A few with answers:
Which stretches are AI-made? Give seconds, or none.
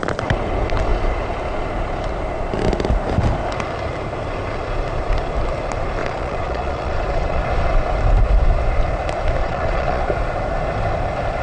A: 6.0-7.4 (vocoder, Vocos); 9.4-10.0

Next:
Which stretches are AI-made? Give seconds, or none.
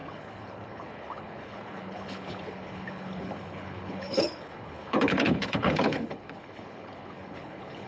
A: 0.0-7.9 (codec, HILCodec)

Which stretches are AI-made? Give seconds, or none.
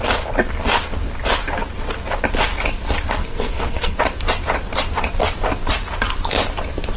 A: 3.2-4.0 (codec, SNAC)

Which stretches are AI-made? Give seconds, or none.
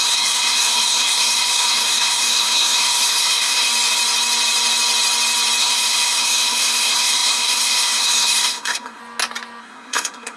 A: 0.0-3.7 (codec, SNAC); 5.6-9.0; 9.6-10.4